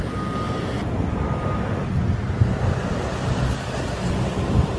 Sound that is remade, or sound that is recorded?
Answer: recorded